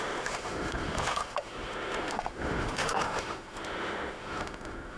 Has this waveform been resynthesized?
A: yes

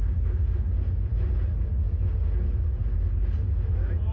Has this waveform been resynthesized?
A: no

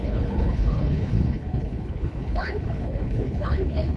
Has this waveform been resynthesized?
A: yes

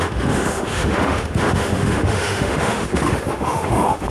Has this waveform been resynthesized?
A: yes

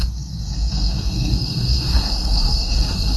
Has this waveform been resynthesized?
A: yes